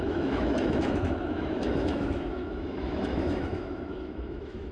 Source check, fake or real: fake